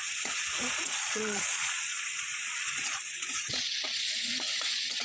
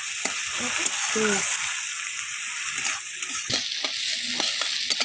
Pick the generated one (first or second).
first